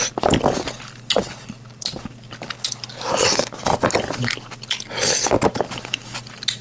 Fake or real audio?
real